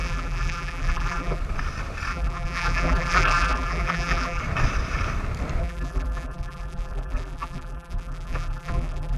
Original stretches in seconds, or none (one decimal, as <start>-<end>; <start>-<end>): 1.4-2.1; 4.4-5.6